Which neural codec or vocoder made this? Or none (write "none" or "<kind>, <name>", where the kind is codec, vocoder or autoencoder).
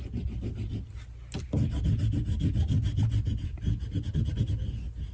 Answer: none